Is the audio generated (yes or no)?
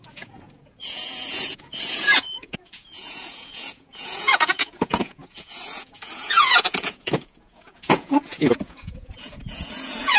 yes